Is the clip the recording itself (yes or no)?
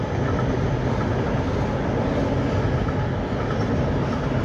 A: yes